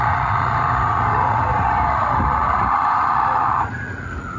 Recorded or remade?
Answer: remade